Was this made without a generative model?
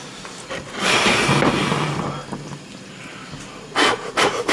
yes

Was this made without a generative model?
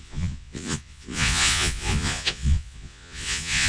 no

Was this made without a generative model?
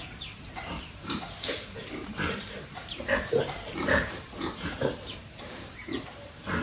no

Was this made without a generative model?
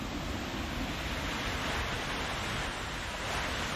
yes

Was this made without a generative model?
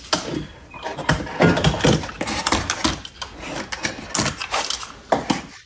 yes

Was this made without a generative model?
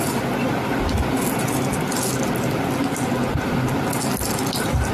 yes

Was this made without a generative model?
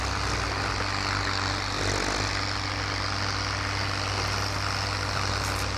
yes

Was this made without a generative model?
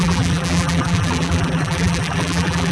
no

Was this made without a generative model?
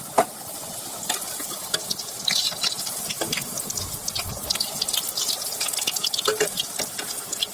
yes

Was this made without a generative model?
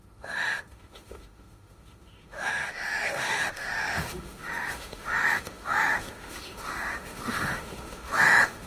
no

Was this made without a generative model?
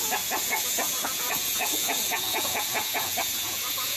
no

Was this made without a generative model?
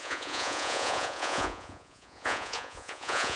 no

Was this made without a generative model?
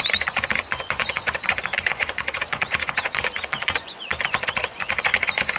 no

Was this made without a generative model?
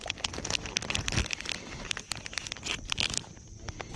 yes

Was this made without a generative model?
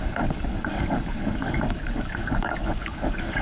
no